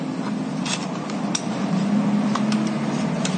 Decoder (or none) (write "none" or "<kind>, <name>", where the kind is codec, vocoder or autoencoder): none